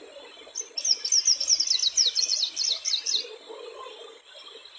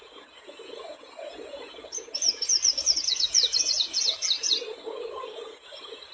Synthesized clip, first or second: second